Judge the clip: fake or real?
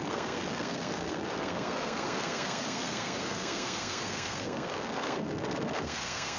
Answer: fake